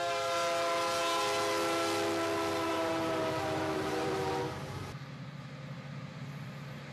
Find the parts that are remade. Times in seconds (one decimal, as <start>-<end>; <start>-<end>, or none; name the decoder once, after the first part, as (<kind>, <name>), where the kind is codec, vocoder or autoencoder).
2.7-4.3 (vocoder, BigVGAN v2)